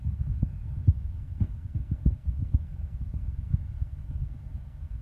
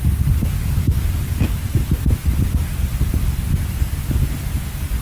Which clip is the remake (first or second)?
first